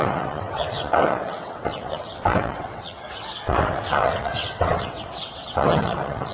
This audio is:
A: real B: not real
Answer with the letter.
B